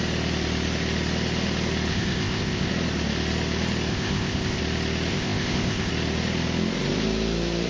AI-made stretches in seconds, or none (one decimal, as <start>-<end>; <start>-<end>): 1.9-2.7; 3.9-4.6; 5.1-5.9